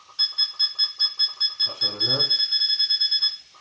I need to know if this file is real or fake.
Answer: real